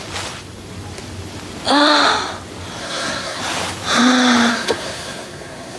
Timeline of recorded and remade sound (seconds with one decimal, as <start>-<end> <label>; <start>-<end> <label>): 0.0-2.8 recorded; 2.8-3.4 remade; 3.4-4.5 recorded; 4.5-5.8 remade